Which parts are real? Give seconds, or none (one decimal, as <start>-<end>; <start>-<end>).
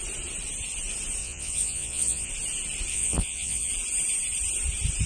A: 0.0-1.2; 2.3-2.9; 3.7-5.1